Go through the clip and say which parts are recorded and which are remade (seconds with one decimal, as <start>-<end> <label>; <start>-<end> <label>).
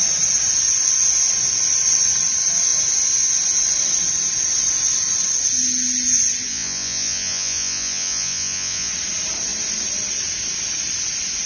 0.0-6.5 recorded; 6.5-8.9 remade; 8.9-11.5 recorded